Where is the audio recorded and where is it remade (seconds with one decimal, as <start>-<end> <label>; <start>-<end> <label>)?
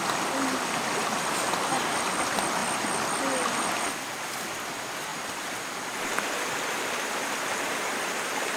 0.0-8.6 recorded